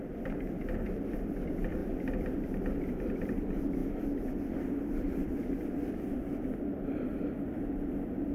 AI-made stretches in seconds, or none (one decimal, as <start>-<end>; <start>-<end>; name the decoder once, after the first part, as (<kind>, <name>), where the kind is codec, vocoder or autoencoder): 0.0-1.8 (vocoder, BigVGAN v2); 2.9-3.8; 4.8-8.3